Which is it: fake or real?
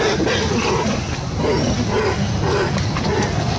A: real